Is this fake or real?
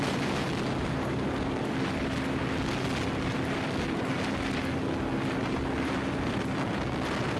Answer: real